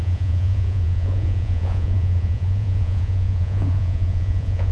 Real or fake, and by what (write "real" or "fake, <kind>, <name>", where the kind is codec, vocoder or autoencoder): fake, vocoder, Vocos